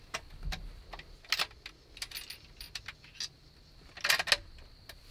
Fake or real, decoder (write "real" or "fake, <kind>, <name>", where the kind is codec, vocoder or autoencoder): real